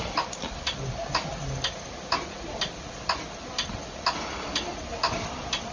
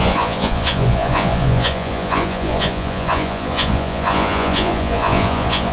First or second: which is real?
first